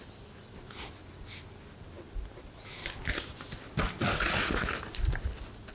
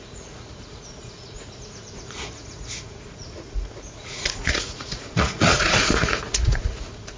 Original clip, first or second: first